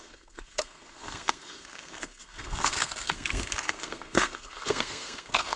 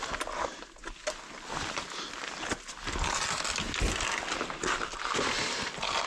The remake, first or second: first